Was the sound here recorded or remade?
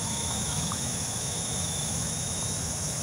remade